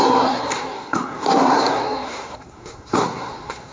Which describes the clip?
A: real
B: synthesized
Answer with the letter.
B